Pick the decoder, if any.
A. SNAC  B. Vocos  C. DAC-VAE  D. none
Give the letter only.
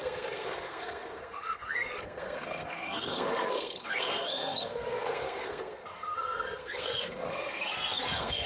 A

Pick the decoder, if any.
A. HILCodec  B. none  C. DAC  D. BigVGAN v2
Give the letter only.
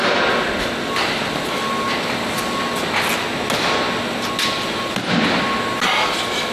B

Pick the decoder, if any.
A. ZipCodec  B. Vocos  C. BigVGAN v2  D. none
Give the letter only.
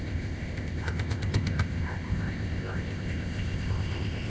A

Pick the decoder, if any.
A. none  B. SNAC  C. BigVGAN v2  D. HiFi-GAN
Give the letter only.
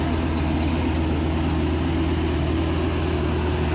A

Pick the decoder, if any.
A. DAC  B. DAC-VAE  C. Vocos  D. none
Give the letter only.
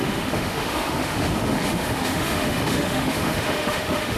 B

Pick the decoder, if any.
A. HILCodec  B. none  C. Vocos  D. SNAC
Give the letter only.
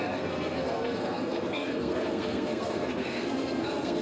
D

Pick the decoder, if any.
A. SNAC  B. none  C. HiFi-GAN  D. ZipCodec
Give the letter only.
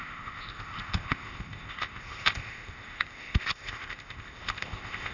D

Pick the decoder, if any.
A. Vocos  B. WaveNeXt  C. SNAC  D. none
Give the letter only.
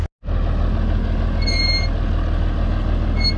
D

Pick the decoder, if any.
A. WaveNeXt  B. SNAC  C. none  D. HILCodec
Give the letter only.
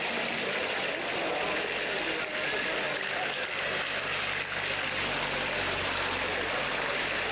C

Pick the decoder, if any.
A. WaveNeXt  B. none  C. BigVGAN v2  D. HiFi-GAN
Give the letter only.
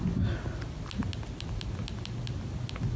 B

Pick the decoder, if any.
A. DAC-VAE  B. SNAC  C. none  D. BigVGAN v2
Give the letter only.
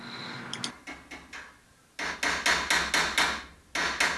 C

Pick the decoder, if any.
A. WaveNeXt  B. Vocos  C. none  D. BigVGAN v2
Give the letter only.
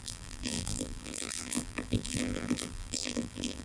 D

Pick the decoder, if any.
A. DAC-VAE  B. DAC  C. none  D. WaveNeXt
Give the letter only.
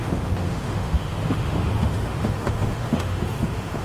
A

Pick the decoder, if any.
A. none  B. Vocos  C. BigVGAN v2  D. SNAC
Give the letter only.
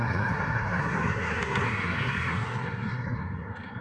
D